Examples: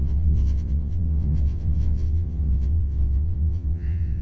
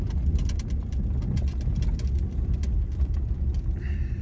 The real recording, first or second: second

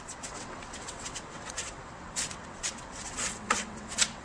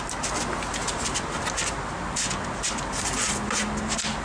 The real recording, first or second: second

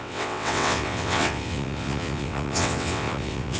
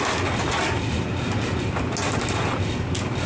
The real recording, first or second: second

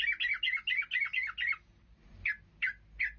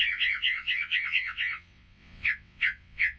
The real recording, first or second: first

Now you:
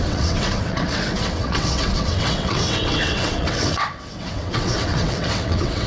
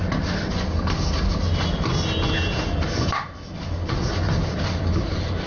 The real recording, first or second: second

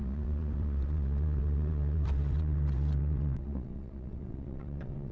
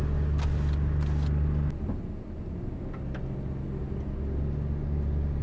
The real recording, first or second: second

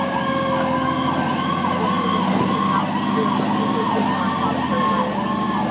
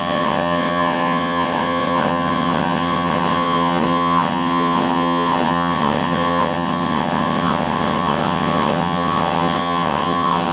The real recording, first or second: first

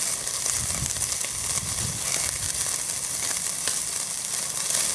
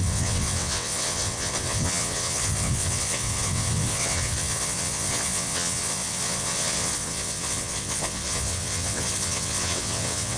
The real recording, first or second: first